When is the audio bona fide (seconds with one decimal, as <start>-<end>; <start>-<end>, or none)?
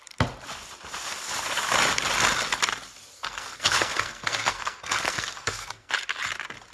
0.0-3.1; 5.9-6.7